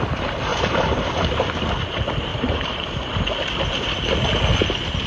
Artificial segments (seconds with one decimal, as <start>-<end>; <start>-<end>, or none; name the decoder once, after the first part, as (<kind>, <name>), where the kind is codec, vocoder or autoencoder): 0.5-1.5 (vocoder, BigVGAN v2); 2.3-3.3